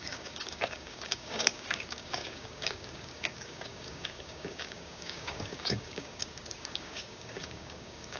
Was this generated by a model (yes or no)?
yes